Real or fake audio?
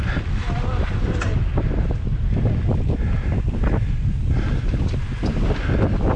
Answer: real